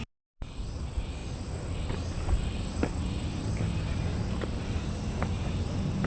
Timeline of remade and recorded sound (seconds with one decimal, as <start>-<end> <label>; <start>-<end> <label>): 0.0-6.1 recorded